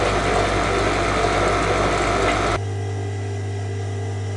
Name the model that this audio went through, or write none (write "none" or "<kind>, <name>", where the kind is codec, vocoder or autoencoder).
none